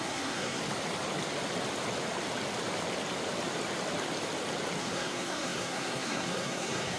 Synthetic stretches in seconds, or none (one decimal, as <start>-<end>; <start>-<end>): 0.0-0.6; 4.8-7.0